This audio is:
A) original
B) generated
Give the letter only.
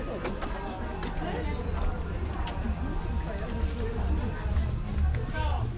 A